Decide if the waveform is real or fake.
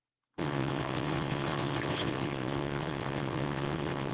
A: fake